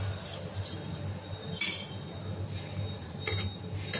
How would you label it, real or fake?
real